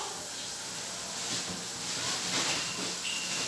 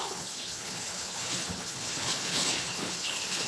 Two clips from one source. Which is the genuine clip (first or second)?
first